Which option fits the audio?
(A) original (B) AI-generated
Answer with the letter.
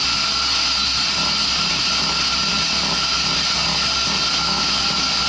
A